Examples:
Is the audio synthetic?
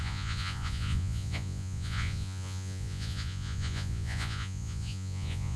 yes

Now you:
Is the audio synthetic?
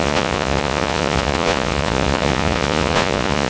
yes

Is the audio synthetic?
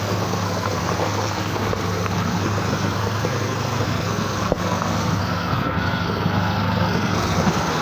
yes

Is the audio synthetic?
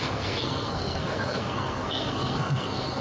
yes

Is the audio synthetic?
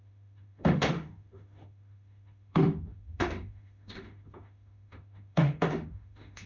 yes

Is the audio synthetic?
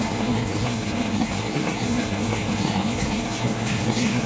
yes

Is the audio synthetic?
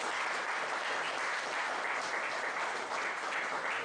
no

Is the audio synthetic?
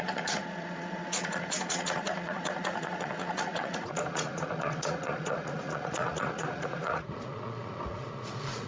yes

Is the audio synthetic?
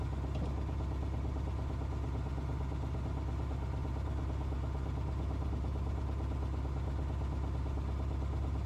no